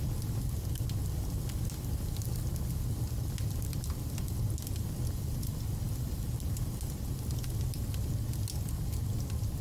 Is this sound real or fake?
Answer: real